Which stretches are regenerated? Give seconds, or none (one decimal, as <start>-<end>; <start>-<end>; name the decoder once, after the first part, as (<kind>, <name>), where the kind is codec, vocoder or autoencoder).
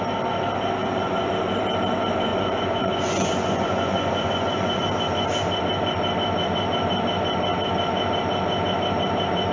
0.8-1.3 (vocoder, Vocos); 2.3-4.8